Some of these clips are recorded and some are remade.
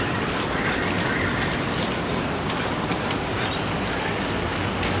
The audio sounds remade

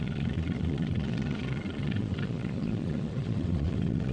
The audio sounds remade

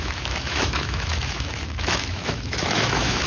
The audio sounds remade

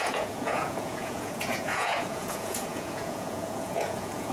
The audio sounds remade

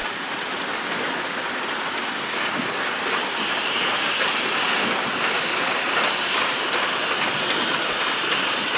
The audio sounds remade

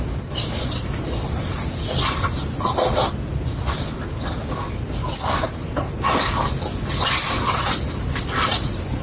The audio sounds recorded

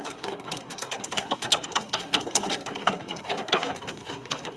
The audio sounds remade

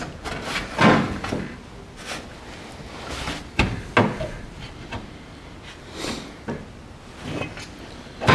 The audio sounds recorded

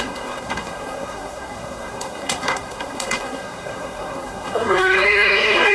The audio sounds remade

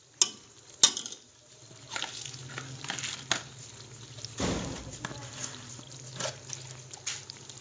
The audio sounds recorded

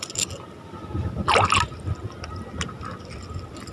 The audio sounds recorded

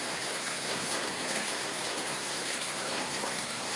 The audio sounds remade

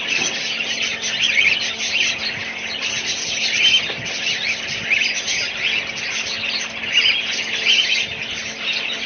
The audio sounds recorded